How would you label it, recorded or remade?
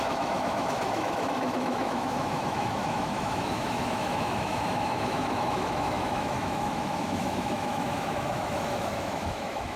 remade